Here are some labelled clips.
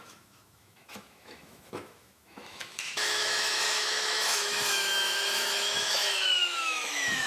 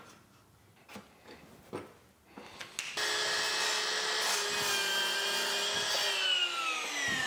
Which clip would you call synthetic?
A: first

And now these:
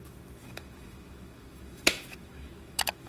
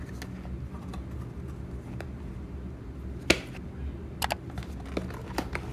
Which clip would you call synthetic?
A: first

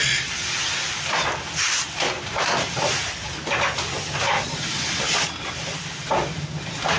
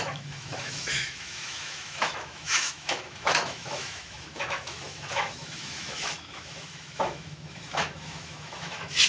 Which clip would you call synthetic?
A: second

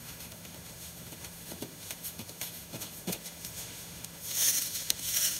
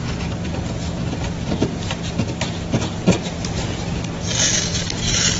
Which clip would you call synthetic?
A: first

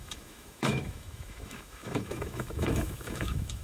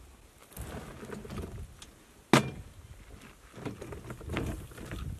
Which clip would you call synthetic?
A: first